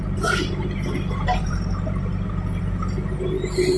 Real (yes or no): no